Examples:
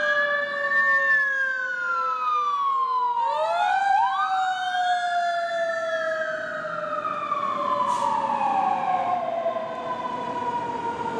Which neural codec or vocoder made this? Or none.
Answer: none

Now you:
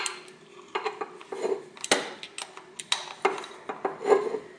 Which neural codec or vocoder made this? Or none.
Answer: none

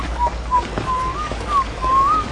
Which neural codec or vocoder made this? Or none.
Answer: codec, DAC